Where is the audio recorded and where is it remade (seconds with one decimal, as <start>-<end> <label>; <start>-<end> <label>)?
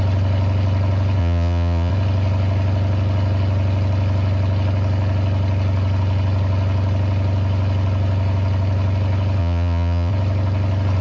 0.0-1.2 recorded; 1.2-1.9 remade; 1.9-9.4 recorded; 9.4-10.1 remade; 10.1-11.0 recorded